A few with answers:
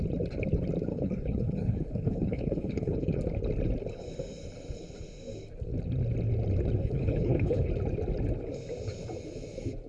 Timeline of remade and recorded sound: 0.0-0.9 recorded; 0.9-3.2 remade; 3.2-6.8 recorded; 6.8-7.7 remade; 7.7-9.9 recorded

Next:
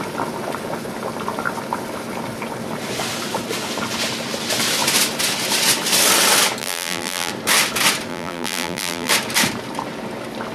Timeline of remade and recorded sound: 0.0-6.6 recorded; 6.6-7.3 remade; 7.3-8.1 recorded; 8.1-9.1 remade; 9.1-10.5 recorded

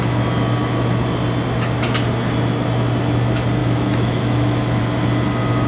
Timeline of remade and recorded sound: 0.0-3.6 recorded; 3.6-4.8 remade; 4.8-5.7 recorded

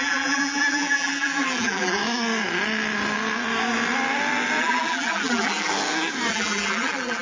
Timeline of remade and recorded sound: 0.0-2.0 remade; 2.0-4.6 recorded; 4.6-5.7 remade; 5.7-6.3 recorded; 6.3-7.2 remade

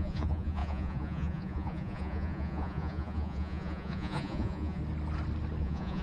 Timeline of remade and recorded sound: 0.0-4.8 remade; 4.8-5.6 recorded; 5.6-6.0 remade